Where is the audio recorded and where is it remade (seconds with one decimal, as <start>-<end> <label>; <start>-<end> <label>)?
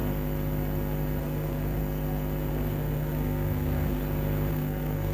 0.0-1.2 recorded; 1.2-1.8 remade; 1.8-2.5 recorded; 2.5-4.0 remade; 4.0-4.5 recorded; 4.5-5.1 remade